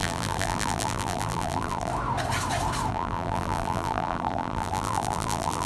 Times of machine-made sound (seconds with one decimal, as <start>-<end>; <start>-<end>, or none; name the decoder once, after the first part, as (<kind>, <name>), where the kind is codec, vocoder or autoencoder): 0.0-1.9 (vocoder, BigVGAN v2); 2.9-5.7